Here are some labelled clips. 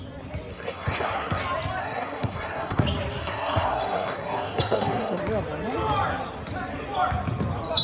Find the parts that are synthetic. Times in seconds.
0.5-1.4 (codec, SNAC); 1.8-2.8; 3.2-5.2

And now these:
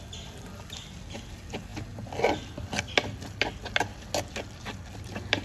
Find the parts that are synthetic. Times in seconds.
none

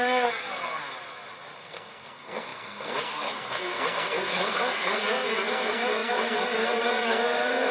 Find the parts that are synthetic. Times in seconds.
0.0-0.8 (codec, SNAC); 1.6-7.7

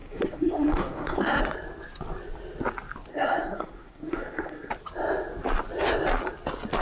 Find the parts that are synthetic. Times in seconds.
0.0-1.4 (codec, SNAC); 3.1-4.7

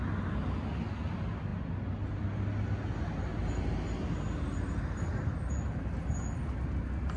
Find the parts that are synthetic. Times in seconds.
none

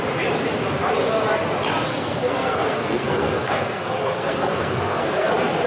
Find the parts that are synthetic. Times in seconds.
1.9-5.3 (codec, SNAC)

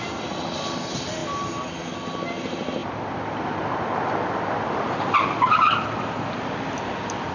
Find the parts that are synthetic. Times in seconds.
none

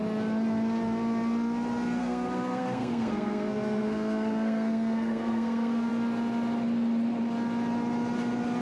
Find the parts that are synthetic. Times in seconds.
2.0-5.9 (codec, SNAC)